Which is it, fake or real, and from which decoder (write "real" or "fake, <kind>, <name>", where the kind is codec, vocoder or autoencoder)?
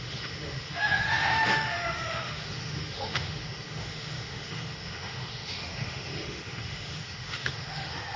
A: fake, autoencoder, DAC-VAE